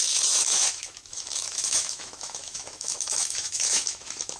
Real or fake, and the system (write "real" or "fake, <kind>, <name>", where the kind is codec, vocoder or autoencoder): fake, autoencoder, DAC-VAE